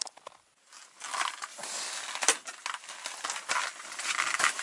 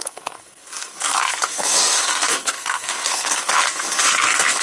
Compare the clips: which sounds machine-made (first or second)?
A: second